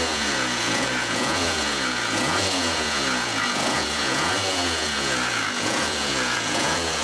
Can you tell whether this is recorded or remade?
remade